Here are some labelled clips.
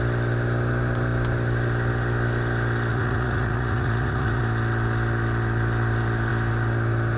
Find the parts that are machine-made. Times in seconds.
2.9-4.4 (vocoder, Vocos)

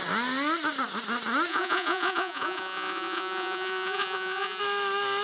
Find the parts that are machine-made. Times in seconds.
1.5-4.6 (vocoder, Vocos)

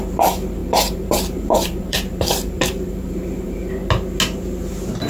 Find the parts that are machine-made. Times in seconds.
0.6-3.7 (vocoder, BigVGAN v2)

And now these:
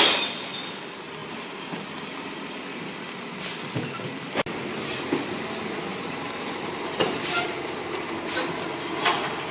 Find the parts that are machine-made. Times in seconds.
5.9-7.6 (vocoder, BigVGAN v2)

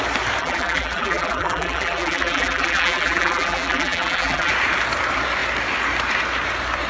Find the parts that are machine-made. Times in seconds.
0.4-4.5 (vocoder, BigVGAN v2)

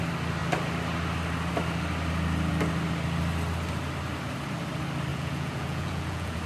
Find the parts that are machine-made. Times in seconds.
5.1-6.5 (vocoder, Vocos)

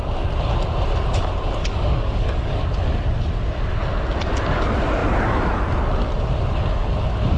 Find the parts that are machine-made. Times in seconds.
1.6-2.6 (codec, DAC)